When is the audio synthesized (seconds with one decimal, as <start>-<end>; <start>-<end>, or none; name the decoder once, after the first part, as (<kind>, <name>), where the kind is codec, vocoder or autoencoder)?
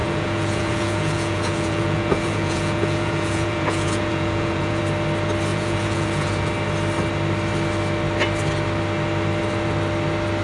0.0-4.8 (vocoder, Vocos); 5.5-6.5